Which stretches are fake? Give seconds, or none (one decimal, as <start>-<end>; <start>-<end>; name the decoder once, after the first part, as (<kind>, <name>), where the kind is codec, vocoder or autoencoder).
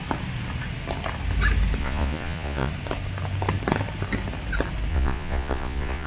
1.8-2.7 (vocoder, Vocos); 4.9-6.1